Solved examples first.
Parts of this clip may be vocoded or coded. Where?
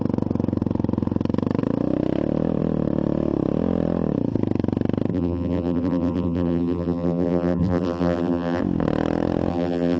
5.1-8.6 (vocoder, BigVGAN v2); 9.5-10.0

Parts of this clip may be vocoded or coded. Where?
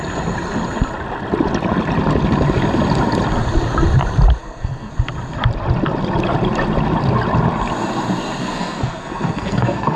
4.4-4.9 (codec, SNAC); 8.4-10.0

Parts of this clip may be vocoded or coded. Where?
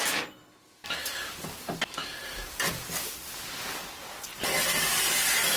none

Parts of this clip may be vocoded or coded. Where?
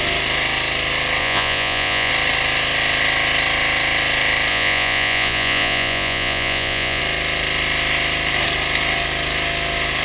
1.2-2.1 (vocoder, Vocos); 4.5-7.0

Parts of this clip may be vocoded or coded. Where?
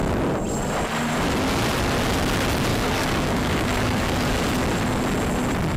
2.7-4.4 (codec, DAC)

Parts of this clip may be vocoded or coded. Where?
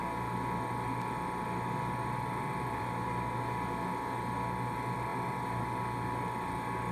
none